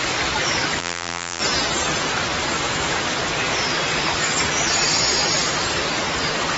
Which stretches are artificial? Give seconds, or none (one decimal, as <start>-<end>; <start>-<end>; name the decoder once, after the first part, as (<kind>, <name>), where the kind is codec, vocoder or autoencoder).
0.8-1.4 (vocoder, BigVGAN v2)